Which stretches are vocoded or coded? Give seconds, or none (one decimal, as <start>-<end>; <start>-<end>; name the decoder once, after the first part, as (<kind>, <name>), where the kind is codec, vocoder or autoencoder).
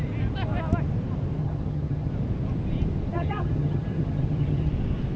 1.4-2.1 (vocoder, HiFi-GAN); 3.1-4.7